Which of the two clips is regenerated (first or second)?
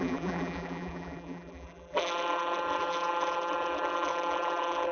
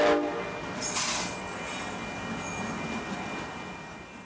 first